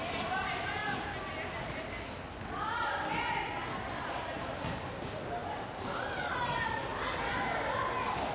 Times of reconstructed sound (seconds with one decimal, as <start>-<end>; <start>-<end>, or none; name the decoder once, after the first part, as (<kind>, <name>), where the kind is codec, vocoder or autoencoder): none